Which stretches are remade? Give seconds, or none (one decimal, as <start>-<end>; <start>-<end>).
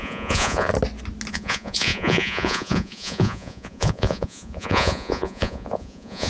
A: 0.0-0.7; 1.3-6.3